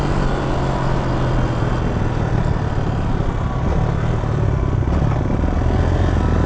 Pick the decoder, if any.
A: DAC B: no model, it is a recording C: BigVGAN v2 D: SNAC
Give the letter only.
B